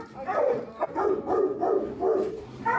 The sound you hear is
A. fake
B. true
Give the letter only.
A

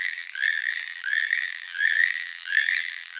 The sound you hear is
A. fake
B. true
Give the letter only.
A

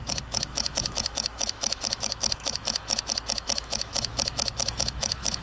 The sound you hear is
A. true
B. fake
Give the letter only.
B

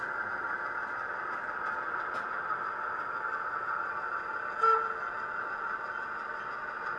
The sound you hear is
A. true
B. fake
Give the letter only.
A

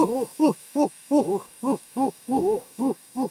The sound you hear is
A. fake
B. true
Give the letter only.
A